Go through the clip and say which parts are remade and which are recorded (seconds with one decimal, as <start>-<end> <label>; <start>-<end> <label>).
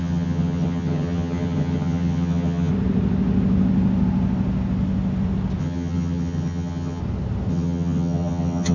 0.0-2.7 remade; 2.7-5.6 recorded; 5.6-7.0 remade; 7.0-7.5 recorded; 7.5-8.7 remade